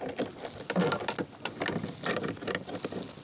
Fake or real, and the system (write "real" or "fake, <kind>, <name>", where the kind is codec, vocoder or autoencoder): real